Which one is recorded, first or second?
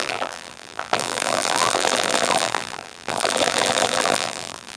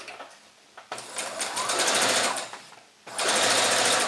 second